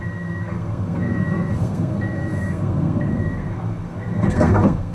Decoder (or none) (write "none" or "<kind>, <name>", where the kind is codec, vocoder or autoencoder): codec, SNAC